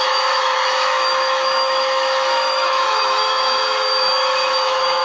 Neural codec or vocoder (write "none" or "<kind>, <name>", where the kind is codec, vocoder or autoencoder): autoencoder, DAC-VAE